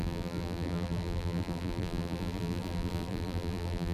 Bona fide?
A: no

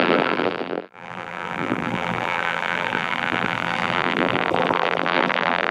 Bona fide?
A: no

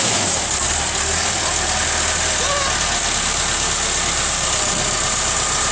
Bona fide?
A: yes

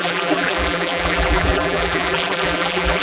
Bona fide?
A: no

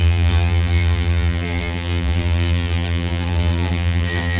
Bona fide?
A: no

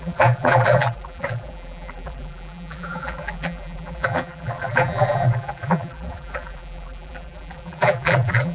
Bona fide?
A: no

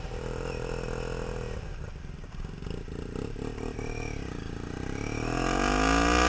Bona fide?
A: yes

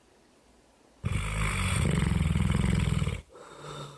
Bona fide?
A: yes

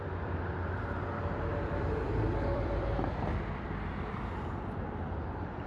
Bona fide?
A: no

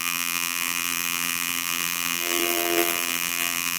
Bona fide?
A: no